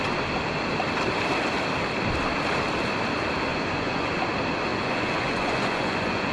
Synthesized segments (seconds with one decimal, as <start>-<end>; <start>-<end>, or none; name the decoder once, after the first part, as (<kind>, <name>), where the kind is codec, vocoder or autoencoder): 3.5-4.1 (vocoder, Vocos); 4.7-6.3